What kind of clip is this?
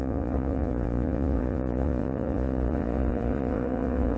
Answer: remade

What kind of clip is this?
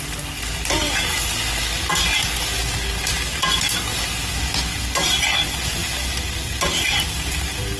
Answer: recorded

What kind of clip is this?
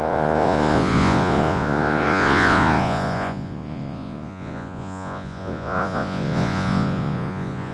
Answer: remade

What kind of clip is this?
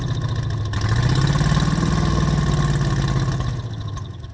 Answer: recorded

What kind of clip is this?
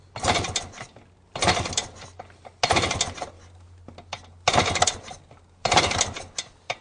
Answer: recorded